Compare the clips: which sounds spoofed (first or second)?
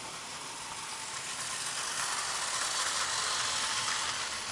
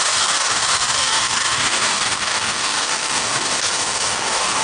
second